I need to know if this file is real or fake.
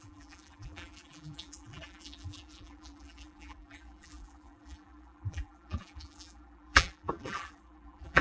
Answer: fake